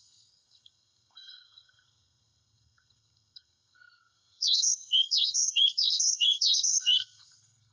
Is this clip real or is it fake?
fake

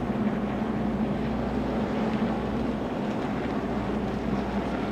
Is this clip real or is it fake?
real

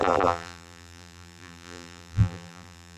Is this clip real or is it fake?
fake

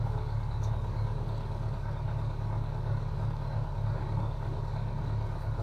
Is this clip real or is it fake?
fake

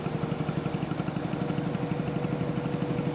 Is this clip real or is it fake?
real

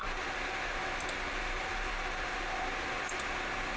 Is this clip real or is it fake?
real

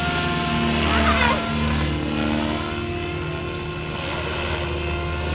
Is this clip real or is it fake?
real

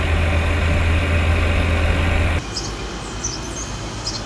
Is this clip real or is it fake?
real